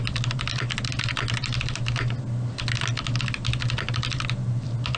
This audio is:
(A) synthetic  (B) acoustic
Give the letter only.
B